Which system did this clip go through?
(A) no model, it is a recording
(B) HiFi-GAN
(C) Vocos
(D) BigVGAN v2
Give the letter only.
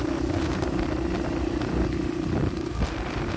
A